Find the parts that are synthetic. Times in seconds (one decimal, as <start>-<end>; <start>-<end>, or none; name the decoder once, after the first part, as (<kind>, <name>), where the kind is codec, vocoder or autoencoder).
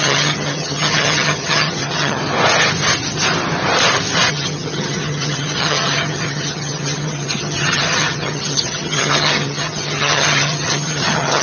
0.0-2.2 (vocoder, HiFi-GAN); 4.3-11.4